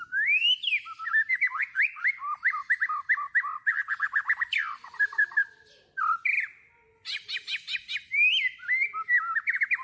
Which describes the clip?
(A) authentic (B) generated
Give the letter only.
A